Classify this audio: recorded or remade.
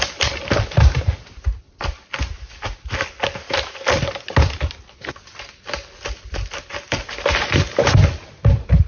recorded